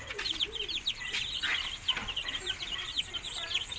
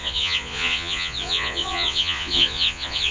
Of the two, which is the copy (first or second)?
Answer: second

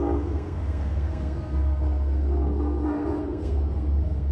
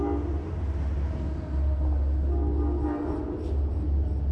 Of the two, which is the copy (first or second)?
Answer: first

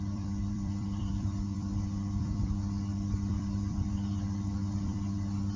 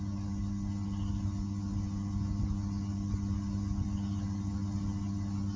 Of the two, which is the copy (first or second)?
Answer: first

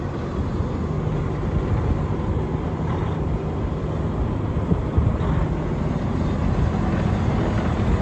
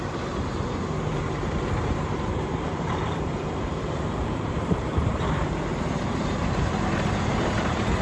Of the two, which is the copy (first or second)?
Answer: second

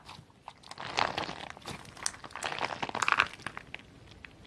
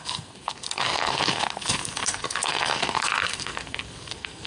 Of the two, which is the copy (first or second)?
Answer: second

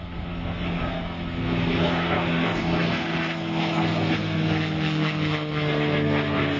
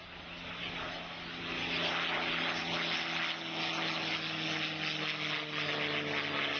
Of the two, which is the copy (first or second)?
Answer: first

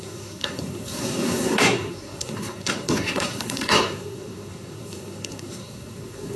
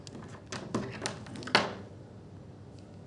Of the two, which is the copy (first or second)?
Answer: first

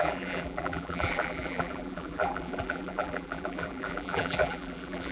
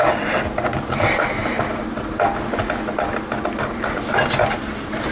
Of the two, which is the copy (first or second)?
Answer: first